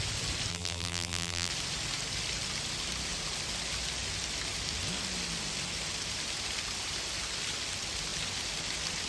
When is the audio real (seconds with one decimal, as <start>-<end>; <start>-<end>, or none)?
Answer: 0.0-0.5; 1.5-9.1